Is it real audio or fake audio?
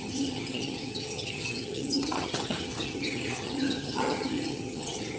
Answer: fake